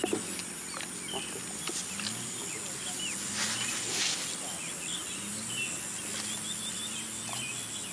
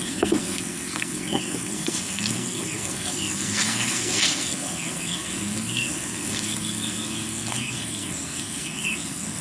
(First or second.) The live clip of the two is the first